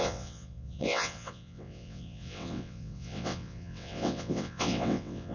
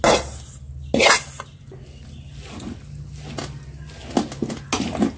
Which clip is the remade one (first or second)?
first